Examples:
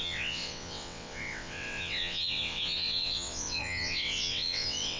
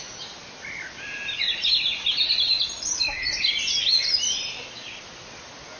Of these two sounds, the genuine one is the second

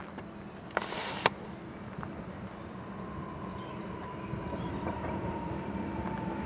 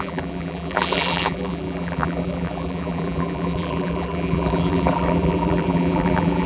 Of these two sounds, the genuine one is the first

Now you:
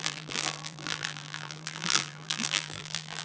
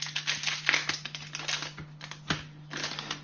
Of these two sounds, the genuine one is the second